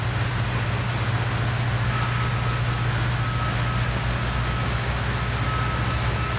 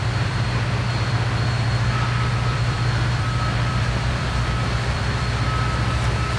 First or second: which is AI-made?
second